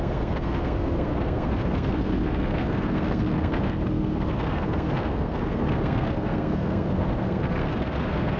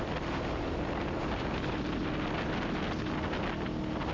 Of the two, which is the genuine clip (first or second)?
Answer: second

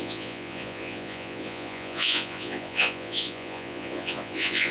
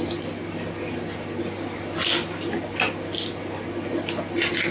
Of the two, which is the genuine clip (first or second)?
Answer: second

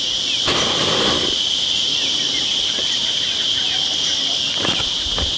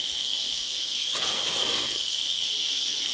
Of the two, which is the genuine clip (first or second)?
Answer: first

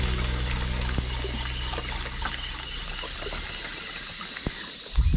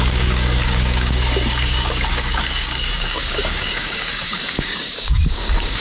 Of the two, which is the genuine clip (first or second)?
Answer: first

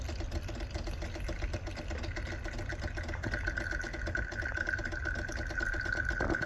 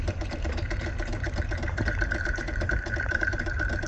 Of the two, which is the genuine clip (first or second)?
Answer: first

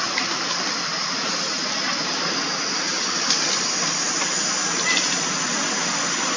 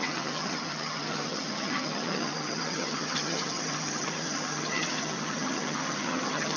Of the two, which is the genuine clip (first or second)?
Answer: first